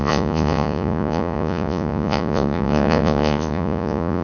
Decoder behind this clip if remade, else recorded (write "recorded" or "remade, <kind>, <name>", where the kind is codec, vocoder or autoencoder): remade, vocoder, Vocos